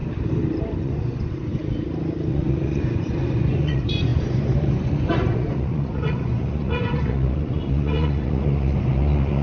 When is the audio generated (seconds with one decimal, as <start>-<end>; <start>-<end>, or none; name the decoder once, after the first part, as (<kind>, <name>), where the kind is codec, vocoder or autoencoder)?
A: 0.8-1.6 (vocoder, Vocos); 2.3-9.4